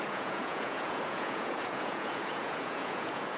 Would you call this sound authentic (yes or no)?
no